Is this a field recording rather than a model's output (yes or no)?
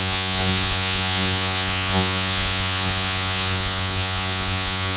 no